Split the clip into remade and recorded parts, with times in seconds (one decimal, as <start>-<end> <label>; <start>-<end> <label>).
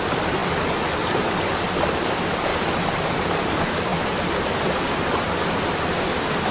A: 0.0-0.4 remade; 0.4-1.5 recorded; 1.5-2.5 remade; 2.5-3.1 recorded; 3.1-3.9 remade; 3.9-4.6 recorded; 4.6-6.5 remade